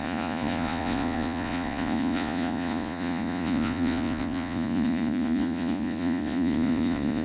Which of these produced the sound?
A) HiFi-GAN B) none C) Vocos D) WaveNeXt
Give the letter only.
C